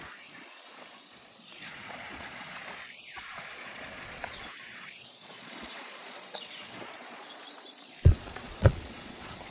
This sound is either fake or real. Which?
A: fake